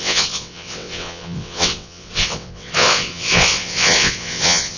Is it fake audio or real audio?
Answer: fake